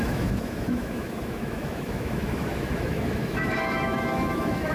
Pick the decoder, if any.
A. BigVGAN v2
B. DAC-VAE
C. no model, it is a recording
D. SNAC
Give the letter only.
B